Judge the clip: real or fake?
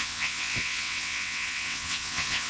fake